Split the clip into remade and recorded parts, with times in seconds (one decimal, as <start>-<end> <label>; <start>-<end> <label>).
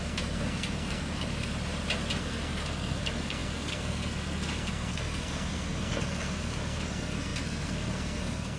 0.0-1.5 remade; 1.5-2.2 recorded; 2.2-8.6 remade